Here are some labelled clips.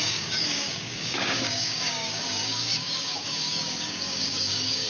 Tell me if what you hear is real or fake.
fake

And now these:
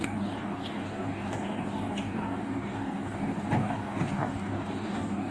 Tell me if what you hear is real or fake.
fake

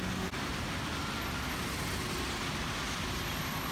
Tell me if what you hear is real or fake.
real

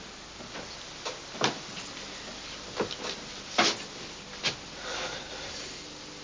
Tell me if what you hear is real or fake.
real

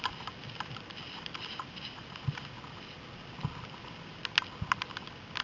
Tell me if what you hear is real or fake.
real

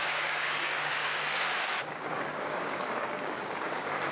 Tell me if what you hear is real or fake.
fake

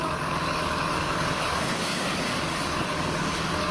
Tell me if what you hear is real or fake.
fake